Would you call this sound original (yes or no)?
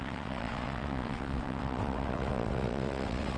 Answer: no